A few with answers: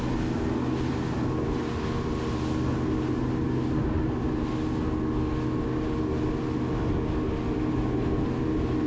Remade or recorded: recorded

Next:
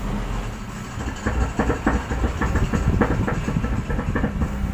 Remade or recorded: recorded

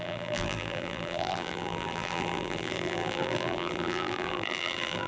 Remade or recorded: remade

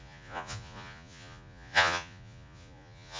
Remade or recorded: remade